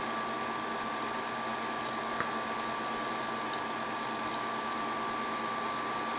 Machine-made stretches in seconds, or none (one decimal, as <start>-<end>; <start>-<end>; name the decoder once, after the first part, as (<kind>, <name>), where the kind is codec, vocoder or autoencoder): none